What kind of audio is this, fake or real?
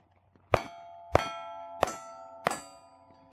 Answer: real